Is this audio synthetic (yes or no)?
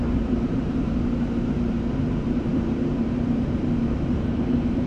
yes